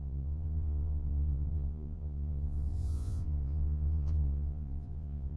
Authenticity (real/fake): fake